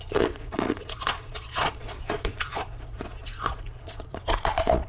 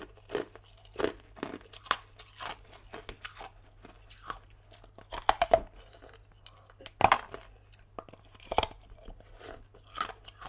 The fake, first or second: first